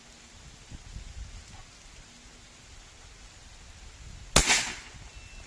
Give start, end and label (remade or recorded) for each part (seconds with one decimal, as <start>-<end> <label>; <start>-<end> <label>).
0.0-5.5 recorded

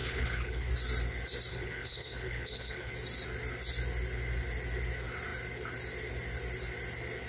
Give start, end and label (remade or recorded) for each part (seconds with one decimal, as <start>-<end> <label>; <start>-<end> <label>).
0.0-0.7 remade; 0.7-1.5 recorded; 1.5-2.9 remade; 2.9-7.3 recorded

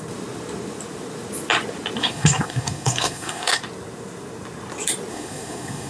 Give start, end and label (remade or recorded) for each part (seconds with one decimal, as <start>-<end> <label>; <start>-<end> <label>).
0.0-2.0 recorded; 2.0-3.6 remade; 3.6-5.1 recorded; 5.1-5.9 remade

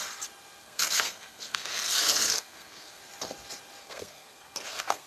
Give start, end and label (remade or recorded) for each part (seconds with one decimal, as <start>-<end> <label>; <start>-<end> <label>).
0.0-0.6 recorded; 0.6-3.0 remade; 3.0-3.8 recorded; 3.8-5.1 remade

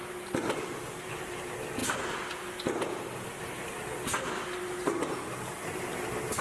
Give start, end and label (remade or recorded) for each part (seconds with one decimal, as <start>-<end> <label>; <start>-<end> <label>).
0.0-6.4 recorded

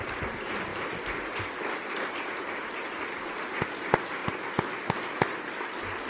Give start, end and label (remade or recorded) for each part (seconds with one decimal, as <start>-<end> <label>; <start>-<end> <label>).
0.0-0.7 recorded; 0.7-2.9 remade; 2.9-6.1 recorded